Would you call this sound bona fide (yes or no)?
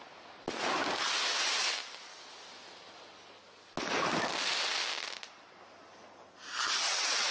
yes